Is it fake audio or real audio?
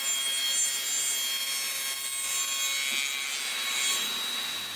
real